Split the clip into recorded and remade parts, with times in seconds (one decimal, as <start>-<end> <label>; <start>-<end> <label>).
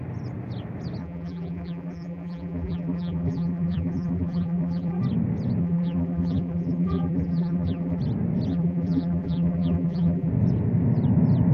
0.0-1.0 recorded; 1.0-5.0 remade; 5.0-5.6 recorded; 5.6-8.0 remade; 8.0-8.5 recorded; 8.5-10.3 remade; 10.3-11.5 recorded